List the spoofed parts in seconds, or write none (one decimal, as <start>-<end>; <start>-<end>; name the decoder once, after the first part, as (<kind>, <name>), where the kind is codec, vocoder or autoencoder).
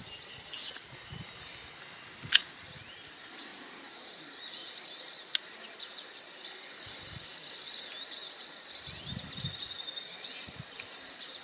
none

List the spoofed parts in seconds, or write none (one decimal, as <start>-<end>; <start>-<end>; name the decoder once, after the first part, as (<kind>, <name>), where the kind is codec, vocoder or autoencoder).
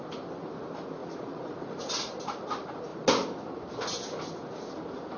1.0-1.9 (vocoder, Vocos)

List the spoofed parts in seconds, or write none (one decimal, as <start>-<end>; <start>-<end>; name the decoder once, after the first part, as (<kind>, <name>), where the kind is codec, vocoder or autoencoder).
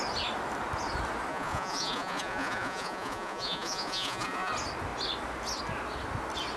1.3-4.5 (vocoder, Vocos)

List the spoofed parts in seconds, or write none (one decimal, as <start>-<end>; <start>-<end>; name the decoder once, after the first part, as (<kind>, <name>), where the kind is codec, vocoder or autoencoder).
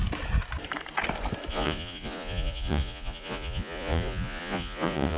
1.5-5.2 (vocoder, Vocos)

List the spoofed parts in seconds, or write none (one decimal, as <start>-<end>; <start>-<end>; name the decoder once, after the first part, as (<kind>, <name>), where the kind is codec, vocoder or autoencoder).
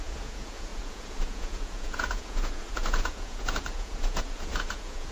0.0-5.1 (vocoder, Vocos)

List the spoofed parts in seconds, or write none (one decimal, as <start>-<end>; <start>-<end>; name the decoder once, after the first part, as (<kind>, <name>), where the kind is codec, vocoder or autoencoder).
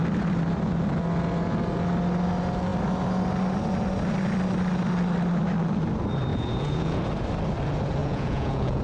6.3-7.0 (vocoder, Vocos); 8.0-8.8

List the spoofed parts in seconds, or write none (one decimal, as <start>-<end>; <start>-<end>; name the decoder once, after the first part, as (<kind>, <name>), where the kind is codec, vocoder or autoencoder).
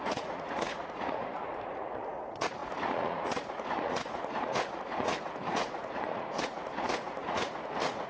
0.0-8.1 (vocoder, Vocos)